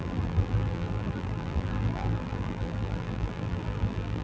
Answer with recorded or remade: remade